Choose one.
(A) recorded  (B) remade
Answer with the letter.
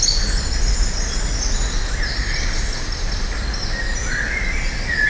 A